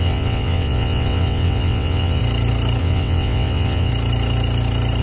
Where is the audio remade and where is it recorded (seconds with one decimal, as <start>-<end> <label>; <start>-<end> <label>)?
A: 0.0-2.2 remade; 2.2-2.8 recorded; 2.8-3.9 remade; 3.9-5.0 recorded